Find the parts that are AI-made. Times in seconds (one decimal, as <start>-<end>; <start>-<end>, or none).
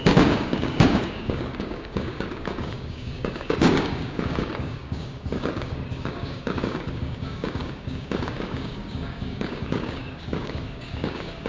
0.0-11.5